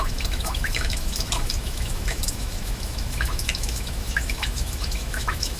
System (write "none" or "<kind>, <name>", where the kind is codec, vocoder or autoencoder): autoencoder, DAC-VAE